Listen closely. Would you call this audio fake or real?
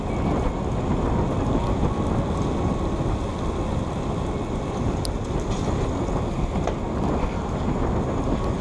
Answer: real